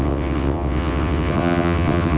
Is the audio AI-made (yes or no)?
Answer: yes